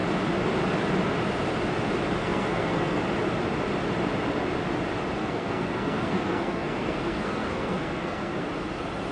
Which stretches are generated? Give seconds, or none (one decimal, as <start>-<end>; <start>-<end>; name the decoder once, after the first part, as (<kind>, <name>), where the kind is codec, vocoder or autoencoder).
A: 2.2-3.0 (codec, SNAC); 5.2-8.5